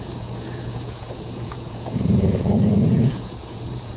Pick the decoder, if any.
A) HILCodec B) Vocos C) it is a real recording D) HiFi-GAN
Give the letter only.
B